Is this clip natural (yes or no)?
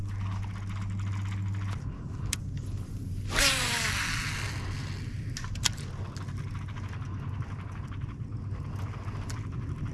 yes